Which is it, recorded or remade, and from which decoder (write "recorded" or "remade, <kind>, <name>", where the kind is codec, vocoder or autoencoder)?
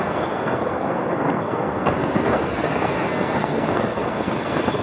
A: remade, codec, SNAC